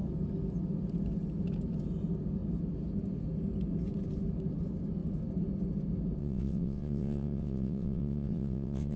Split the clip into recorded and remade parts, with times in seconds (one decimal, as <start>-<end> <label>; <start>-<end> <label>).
0.0-6.2 recorded; 6.2-9.0 remade